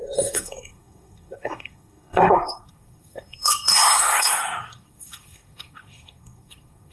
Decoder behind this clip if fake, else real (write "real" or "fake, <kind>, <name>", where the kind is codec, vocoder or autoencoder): fake, codec, SNAC